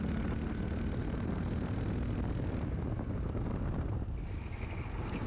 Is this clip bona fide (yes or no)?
yes